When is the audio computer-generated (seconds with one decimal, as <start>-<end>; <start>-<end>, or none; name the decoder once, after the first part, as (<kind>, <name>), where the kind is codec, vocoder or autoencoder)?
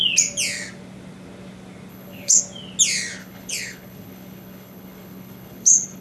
1.9-2.4 (codec, HILCodec); 3.2-6.0